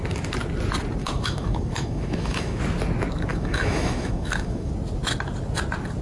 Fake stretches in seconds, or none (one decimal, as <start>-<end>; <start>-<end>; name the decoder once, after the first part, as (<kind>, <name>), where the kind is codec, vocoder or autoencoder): 1.0-2.6 (autoencoder, DAC-VAE); 3.3-4.7